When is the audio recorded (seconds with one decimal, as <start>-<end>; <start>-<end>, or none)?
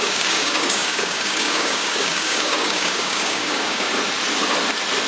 3.9-5.1